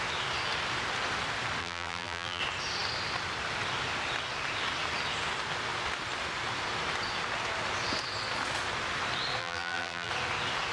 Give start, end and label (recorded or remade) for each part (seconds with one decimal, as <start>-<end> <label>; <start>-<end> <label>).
0.0-1.6 recorded; 1.6-2.4 remade; 2.4-9.4 recorded; 9.4-10.1 remade; 10.1-10.7 recorded